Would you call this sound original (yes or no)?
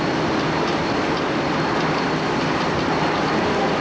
yes